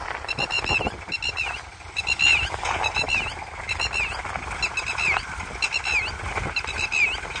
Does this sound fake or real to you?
real